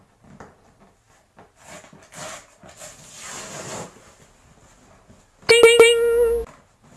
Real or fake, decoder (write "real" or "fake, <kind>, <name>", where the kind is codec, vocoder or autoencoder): real